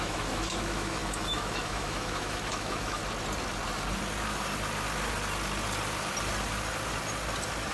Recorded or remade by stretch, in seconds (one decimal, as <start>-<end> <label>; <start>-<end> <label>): 0.0-3.0 remade; 3.0-7.7 recorded